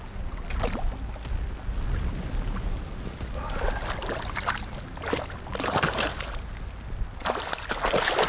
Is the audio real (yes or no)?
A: yes